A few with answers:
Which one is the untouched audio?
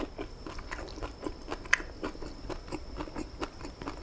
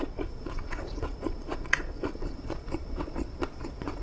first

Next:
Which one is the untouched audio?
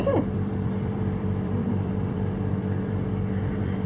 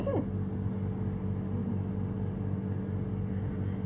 second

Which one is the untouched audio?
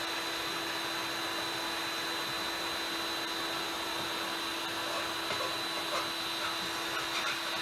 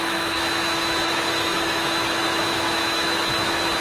first